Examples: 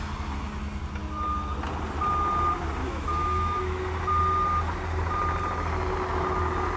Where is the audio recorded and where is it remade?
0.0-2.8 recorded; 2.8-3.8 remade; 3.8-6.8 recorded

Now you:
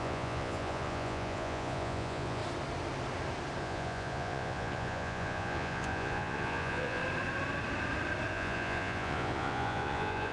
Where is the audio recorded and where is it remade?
0.0-2.4 remade; 2.4-3.6 recorded; 3.6-7.0 remade; 7.0-8.3 recorded; 8.3-10.3 remade